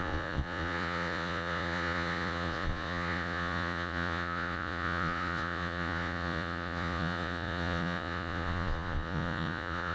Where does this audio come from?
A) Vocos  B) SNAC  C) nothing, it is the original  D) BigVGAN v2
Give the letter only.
A